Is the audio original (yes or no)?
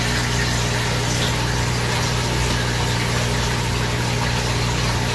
yes